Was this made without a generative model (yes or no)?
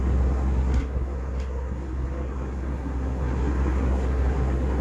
no